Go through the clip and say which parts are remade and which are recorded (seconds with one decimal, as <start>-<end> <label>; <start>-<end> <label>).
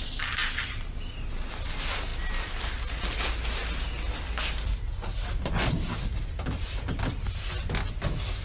0.0-8.4 recorded